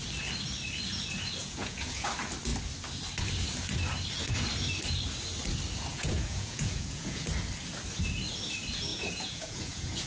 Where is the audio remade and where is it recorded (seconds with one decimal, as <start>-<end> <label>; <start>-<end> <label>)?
0.0-1.4 recorded; 1.4-2.1 remade; 2.1-5.9 recorded; 5.9-7.3 remade; 7.3-8.9 recorded; 8.9-10.1 remade